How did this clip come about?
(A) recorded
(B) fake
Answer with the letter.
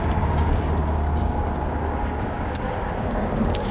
B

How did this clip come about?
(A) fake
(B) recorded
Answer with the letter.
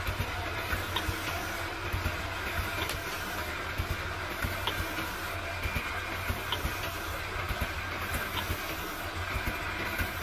B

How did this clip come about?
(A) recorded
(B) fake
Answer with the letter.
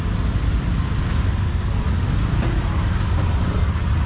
A